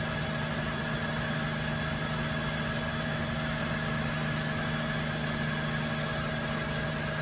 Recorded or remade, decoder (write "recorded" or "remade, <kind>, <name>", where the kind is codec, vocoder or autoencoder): recorded